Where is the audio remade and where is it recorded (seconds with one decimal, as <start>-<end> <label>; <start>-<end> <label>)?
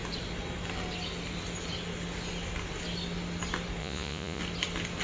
0.0-3.8 recorded; 3.8-4.4 remade; 4.4-5.0 recorded